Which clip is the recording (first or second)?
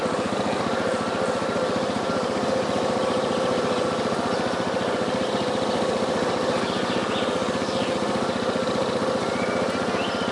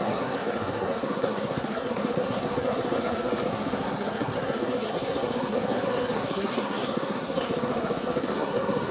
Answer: first